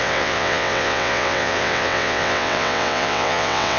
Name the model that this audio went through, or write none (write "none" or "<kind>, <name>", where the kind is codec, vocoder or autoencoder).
vocoder, WaveNeXt